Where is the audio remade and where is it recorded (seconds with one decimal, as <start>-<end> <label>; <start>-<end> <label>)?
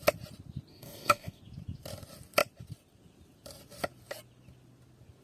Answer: 0.0-0.7 recorded; 0.7-1.4 remade; 1.4-5.2 recorded